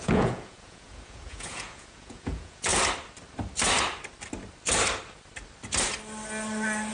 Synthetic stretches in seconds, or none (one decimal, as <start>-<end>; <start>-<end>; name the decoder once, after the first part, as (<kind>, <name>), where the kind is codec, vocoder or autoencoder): 0.0-2.7 (vocoder, Vocos)